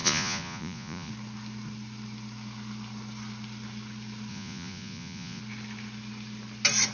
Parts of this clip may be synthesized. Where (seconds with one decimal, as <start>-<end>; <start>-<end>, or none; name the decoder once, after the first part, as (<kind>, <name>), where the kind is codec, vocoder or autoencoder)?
0.0-1.1 (vocoder, Vocos); 4.3-5.4